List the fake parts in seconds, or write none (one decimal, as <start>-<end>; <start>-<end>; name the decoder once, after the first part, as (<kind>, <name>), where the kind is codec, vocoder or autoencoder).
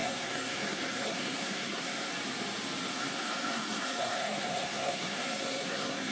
0.0-2.1 (codec, SNAC); 2.9-6.1